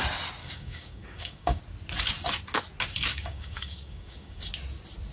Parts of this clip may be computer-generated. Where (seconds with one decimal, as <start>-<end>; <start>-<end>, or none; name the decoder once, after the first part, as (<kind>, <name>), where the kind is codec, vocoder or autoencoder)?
0.4-1.6 (codec, DAC); 3.1-4.4